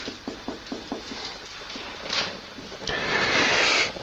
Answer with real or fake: real